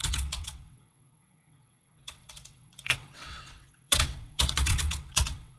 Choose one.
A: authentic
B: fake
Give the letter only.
B